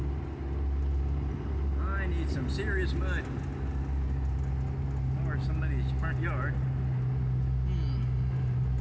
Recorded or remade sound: recorded